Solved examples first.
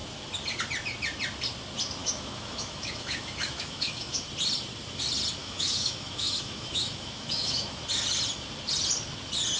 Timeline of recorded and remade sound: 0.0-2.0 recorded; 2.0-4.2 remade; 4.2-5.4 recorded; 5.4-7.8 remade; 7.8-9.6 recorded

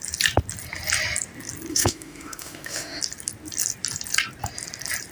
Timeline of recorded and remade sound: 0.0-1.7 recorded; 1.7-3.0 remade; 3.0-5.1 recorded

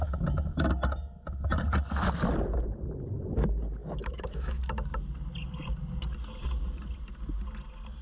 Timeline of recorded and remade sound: 0.0-3.8 recorded; 3.8-4.6 remade; 4.6-8.0 recorded

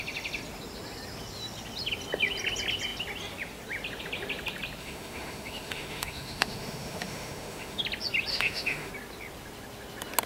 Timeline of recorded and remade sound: 0.0-4.8 recorded; 4.8-7.8 remade; 7.8-8.3 recorded; 8.3-8.9 remade; 8.9-10.3 recorded